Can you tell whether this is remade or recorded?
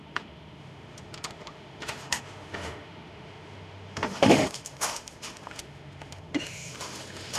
remade